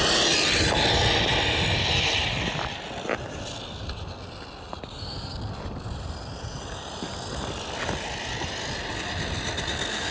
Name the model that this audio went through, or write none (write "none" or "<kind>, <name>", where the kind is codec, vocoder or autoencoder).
none